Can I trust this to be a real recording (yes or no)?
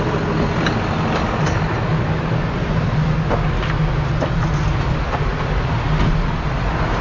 yes